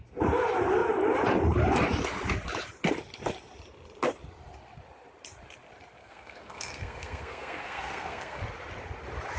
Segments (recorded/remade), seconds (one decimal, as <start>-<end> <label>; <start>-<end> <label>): 0.0-6.0 recorded; 6.0-8.4 remade; 8.4-9.4 recorded